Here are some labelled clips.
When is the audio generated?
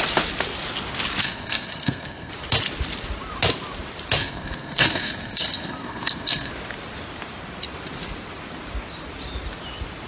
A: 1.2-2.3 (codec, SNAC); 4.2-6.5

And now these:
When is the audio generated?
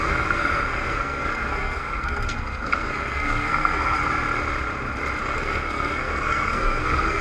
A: 0.0-4.0 (codec, SNAC); 5.2-7.2